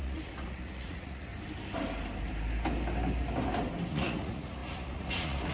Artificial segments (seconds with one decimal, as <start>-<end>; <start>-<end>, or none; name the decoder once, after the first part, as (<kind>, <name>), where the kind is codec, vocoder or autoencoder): 0.0-1.3 (vocoder, Vocos); 3.9-5.5